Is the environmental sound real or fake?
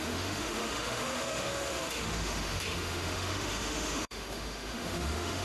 fake